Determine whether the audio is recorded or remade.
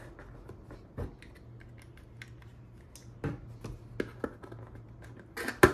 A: recorded